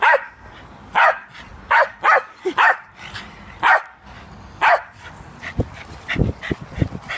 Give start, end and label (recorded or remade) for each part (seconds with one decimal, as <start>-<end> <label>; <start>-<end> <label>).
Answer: 0.0-7.2 recorded